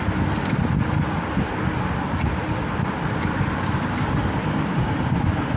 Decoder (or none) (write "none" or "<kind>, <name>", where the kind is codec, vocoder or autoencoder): none